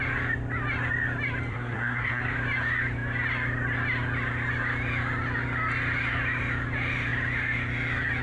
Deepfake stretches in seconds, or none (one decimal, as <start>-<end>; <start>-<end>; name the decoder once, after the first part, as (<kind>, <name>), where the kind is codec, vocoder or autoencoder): 1.5-2.2 (codec, SNAC)